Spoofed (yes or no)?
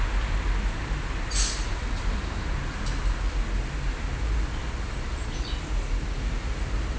no